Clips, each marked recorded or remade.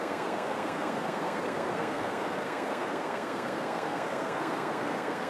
remade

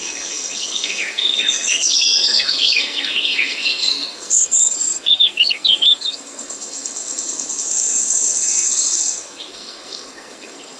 remade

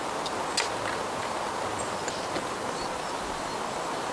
recorded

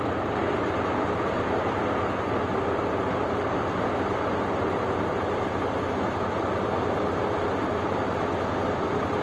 recorded